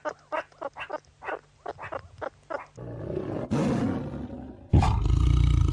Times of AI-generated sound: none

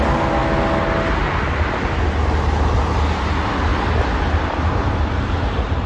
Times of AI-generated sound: none